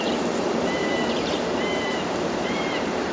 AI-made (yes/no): yes